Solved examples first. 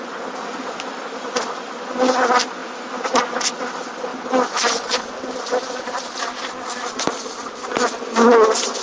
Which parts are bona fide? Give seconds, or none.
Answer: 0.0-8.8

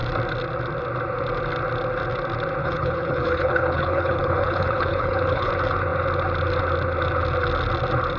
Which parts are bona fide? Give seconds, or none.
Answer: 0.0-2.6; 5.5-8.2

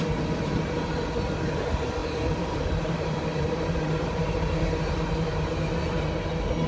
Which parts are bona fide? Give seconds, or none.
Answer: 0.0-2.0; 6.0-6.7

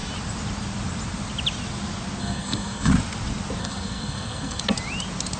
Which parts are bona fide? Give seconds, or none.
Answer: 0.0-2.2; 2.9-3.6; 4.6-5.4

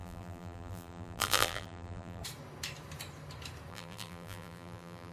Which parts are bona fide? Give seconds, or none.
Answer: 2.2-3.7

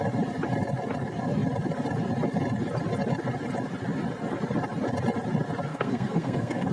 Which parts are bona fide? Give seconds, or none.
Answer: 0.0-5.7

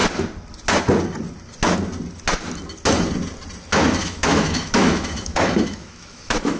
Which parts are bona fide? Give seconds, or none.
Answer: 0.0-4.0